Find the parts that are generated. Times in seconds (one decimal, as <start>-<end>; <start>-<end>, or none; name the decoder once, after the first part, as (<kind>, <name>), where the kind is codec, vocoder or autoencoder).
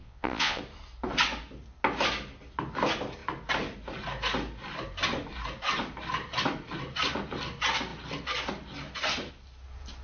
0.0-0.6 (vocoder, Vocos)